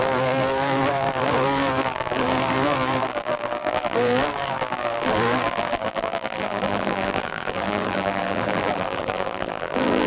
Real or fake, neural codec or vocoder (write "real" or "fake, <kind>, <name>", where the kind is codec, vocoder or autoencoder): fake, vocoder, BigVGAN v2